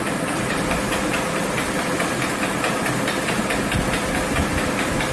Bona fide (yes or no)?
yes